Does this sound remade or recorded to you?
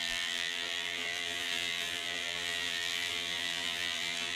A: remade